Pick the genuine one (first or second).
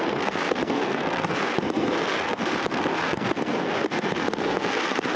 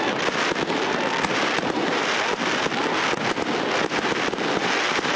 second